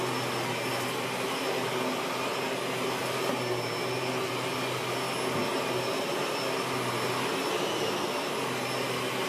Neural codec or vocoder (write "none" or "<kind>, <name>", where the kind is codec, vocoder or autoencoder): none